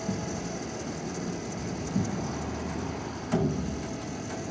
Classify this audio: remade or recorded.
recorded